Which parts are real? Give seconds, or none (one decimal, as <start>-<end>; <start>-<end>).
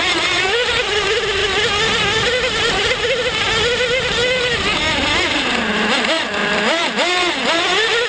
0.0-8.1